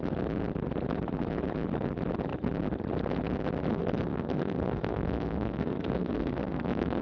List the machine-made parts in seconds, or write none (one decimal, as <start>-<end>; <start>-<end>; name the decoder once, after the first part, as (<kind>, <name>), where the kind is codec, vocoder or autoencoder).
3.7-7.0 (codec, SNAC)